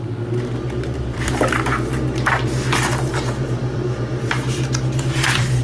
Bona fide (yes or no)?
no